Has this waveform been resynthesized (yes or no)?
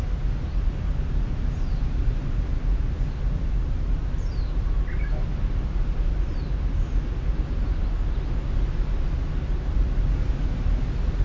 no